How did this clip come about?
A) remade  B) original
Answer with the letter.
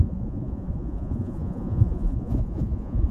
A